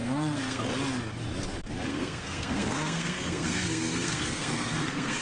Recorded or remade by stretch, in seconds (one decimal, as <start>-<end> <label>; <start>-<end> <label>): 0.0-0.6 remade; 0.6-1.9 recorded; 1.9-5.2 remade